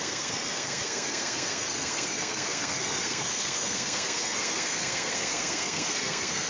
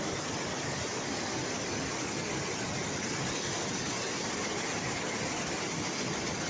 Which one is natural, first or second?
second